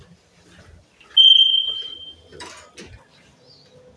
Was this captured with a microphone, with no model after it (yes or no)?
yes